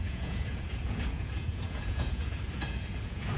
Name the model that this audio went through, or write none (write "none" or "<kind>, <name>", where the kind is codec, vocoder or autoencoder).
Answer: vocoder, Vocos